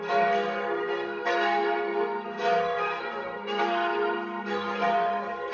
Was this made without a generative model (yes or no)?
no